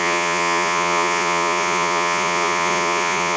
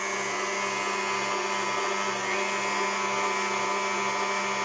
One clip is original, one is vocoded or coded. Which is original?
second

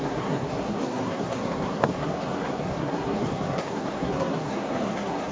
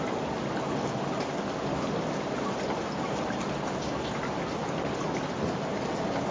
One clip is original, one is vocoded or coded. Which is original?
second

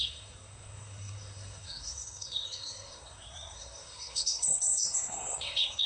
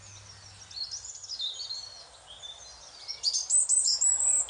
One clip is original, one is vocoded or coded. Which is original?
second